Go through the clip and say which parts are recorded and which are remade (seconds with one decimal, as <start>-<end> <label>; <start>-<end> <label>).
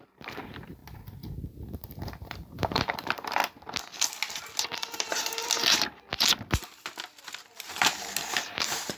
0.0-0.8 remade; 0.8-2.0 recorded; 2.0-3.4 remade; 3.4-8.3 recorded; 8.3-9.0 remade